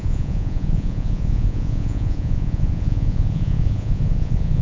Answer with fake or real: fake